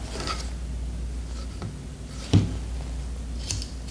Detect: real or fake real